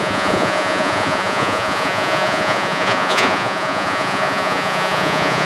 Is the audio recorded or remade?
remade